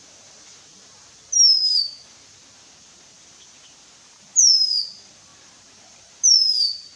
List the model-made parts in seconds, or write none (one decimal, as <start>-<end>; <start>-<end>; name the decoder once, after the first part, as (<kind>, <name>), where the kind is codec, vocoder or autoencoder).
1.6-2.1 (autoencoder, DAC-VAE)